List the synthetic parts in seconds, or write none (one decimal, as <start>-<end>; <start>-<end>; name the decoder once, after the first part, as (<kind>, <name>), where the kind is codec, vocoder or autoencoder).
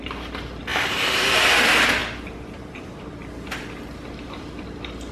0.0-2.0 (vocoder, BigVGAN v2); 4.4-5.1